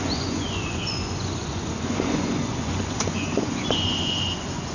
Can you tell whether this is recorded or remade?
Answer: remade